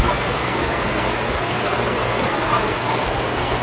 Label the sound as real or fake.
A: fake